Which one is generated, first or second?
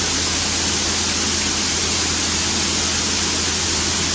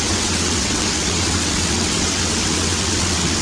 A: second